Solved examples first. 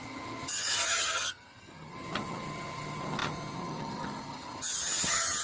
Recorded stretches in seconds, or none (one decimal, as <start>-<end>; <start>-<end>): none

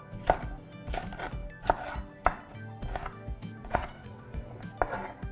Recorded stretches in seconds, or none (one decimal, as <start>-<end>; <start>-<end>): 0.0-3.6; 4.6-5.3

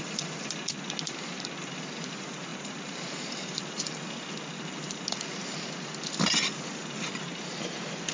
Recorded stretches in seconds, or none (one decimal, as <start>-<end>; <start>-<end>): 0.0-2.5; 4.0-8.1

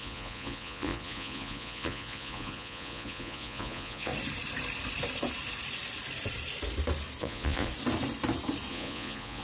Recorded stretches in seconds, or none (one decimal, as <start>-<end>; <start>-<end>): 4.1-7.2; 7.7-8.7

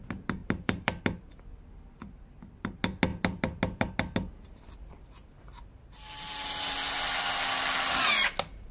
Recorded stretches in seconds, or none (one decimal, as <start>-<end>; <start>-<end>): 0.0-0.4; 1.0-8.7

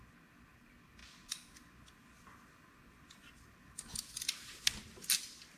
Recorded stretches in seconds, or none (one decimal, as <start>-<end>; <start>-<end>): 0.0-5.6

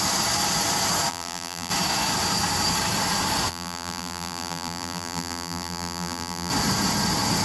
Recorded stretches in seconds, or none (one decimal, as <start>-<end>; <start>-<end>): 0.0-1.1; 1.7-3.5; 6.5-7.4